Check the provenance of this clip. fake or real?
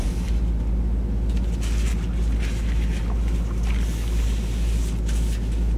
real